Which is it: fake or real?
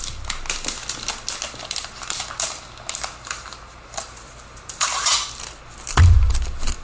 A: real